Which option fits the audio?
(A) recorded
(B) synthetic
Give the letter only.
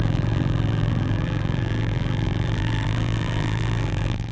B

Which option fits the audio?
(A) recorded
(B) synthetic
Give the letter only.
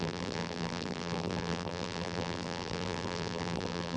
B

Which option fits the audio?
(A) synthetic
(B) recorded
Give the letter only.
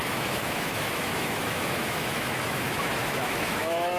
A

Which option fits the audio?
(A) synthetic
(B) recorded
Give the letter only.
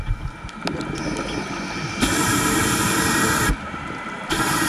B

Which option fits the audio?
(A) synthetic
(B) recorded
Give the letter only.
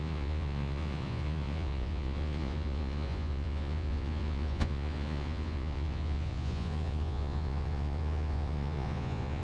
A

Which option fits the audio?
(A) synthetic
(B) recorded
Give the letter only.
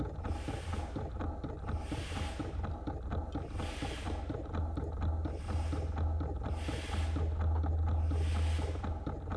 B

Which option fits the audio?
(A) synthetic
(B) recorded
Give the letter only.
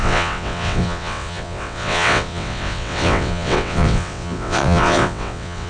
A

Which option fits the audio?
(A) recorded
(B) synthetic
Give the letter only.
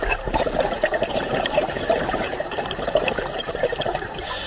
B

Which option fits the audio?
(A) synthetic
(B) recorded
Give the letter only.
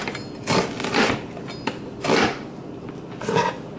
B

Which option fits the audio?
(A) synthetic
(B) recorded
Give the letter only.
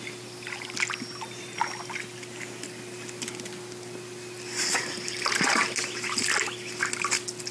B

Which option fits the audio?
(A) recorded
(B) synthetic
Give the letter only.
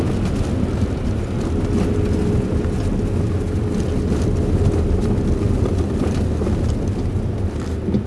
A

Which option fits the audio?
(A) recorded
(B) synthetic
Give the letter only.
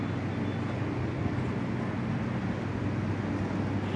A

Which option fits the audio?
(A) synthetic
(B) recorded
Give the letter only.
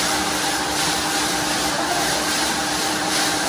A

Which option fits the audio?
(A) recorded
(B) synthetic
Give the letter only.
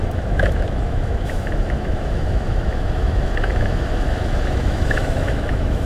B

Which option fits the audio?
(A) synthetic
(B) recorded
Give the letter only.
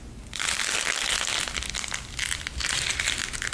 B